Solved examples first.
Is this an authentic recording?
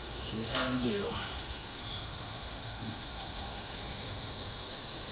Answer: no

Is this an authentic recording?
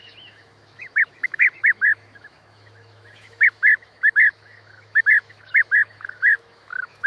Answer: no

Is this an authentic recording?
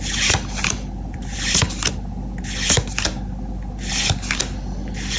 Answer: yes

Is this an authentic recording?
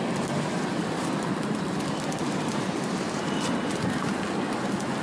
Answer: yes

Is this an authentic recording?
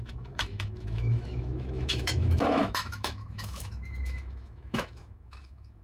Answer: no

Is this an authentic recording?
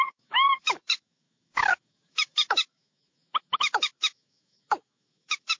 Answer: no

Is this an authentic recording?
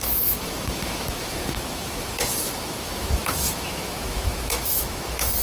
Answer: no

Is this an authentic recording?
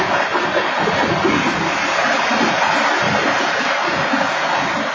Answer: yes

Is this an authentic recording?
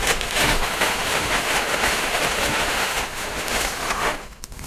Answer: no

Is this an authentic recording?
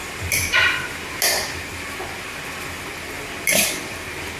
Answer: yes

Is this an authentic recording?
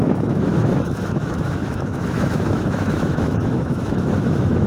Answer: no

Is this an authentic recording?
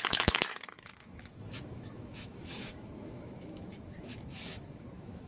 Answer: no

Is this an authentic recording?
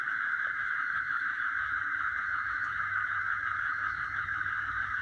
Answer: no